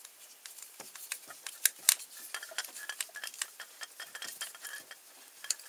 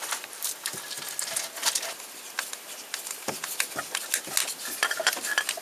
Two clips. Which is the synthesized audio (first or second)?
first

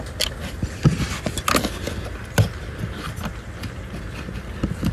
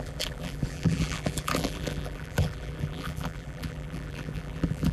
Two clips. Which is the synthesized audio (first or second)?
second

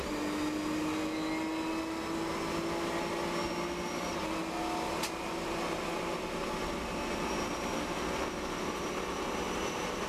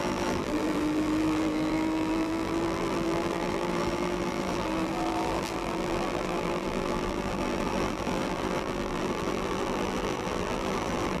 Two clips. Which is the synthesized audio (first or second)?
second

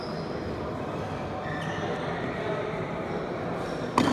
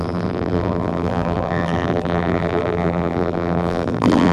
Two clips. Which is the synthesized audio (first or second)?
second